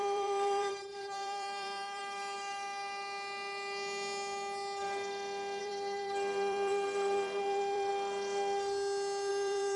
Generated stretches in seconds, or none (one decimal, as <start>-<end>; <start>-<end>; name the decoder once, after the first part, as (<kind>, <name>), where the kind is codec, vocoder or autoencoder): 0.0-2.0 (vocoder, BigVGAN v2); 5.6-7.9; 9.3-9.8